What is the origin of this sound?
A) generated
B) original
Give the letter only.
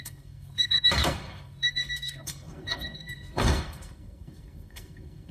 A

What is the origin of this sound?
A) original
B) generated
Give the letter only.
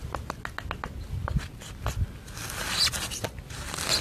A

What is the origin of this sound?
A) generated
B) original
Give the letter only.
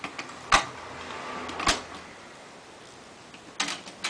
B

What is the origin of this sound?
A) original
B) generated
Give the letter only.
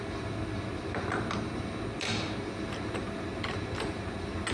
A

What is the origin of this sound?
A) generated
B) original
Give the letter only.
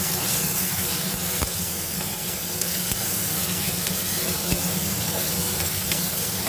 A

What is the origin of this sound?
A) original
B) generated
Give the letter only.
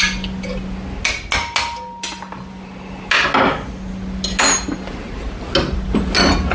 A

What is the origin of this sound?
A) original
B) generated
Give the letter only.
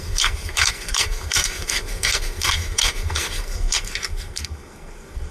B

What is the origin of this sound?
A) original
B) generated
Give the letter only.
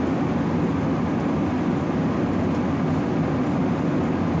A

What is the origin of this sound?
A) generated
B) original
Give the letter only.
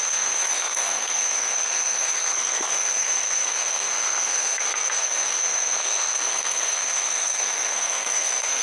A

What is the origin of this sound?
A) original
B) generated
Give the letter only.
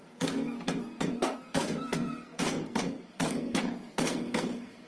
B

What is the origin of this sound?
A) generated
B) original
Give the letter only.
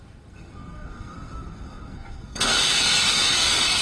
A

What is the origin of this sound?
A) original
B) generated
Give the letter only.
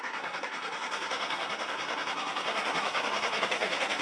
B